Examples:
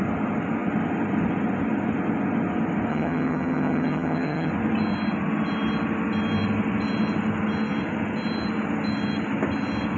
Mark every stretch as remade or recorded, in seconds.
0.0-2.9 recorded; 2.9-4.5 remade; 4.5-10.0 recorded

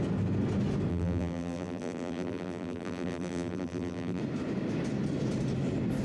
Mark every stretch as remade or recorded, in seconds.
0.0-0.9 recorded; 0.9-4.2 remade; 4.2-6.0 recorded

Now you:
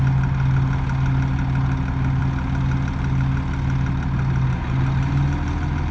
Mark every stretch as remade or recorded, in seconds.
0.0-5.9 recorded